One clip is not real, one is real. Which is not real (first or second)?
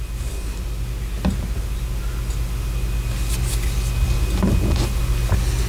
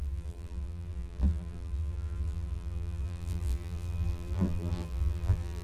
second